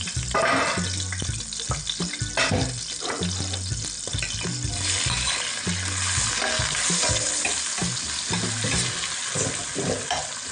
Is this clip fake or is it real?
real